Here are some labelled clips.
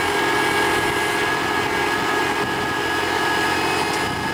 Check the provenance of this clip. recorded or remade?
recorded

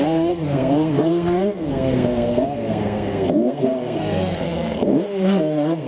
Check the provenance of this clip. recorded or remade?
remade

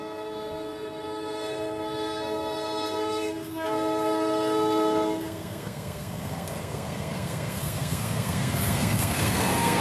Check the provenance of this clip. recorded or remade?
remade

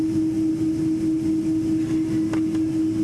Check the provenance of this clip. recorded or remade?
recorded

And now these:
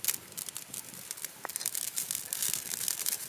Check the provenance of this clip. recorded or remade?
recorded